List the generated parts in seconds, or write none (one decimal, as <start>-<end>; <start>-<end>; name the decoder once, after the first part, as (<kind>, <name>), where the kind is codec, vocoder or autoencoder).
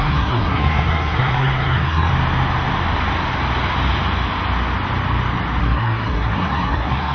0.0-2.1 (codec, SNAC); 5.6-7.1